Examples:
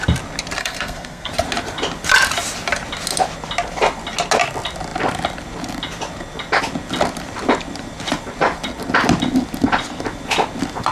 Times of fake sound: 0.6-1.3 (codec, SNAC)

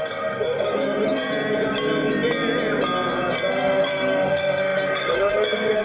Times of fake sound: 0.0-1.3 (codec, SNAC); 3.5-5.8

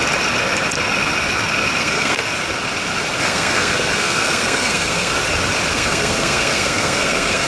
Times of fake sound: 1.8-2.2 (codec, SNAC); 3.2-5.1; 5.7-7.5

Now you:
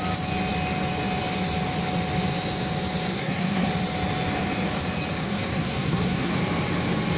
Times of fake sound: 3.1-3.7 (codec, SNAC); 5.2-6.3

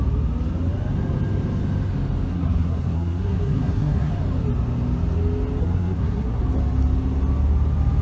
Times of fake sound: 2.3-4.1 (codec, SNAC); 5.6-6.4